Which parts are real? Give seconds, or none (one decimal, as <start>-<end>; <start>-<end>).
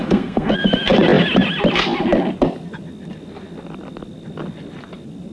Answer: 0.5-5.3